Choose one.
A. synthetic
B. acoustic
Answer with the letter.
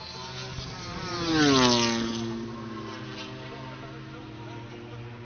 B